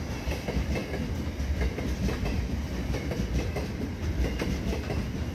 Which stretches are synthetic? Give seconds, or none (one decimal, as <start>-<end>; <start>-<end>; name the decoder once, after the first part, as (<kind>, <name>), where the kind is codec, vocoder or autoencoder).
0.0-5.3 (vocoder, BigVGAN v2)